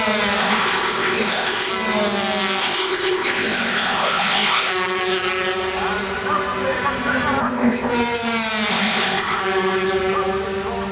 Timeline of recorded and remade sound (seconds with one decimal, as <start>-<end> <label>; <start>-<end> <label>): 0.0-0.4 recorded; 0.4-1.7 remade; 1.7-2.6 recorded; 2.6-4.7 remade; 4.7-7.4 recorded; 7.4-7.9 remade; 7.9-8.7 recorded; 8.7-9.4 remade; 9.4-10.9 recorded